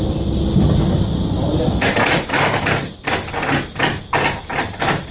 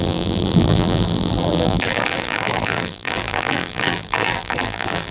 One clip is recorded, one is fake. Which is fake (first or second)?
second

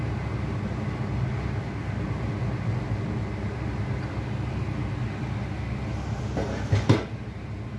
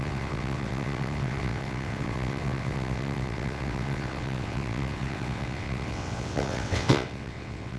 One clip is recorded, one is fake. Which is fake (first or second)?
second